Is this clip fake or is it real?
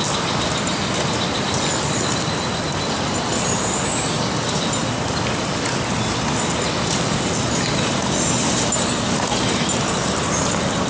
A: real